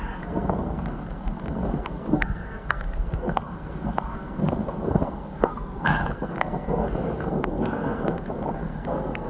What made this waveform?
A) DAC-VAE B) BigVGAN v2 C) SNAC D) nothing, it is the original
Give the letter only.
C